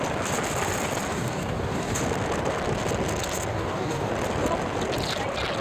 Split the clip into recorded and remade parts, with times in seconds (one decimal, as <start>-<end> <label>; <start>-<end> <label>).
0.0-1.1 recorded; 1.1-2.0 remade; 2.0-3.5 recorded; 3.5-4.1 remade; 4.1-5.6 recorded

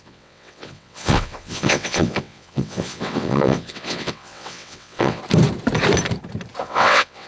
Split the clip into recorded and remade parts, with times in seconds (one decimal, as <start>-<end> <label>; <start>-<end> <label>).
0.0-5.2 remade; 5.2-6.6 recorded; 6.6-7.3 remade

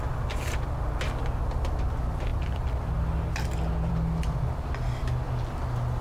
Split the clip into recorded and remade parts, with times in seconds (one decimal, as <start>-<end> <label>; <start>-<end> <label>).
0.0-6.0 recorded